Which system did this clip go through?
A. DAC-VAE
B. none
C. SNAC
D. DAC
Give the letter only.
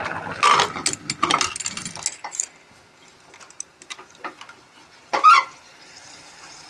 B